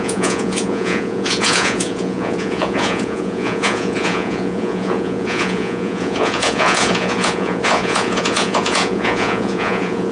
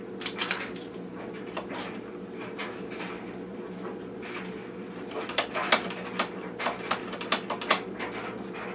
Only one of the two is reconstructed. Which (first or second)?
first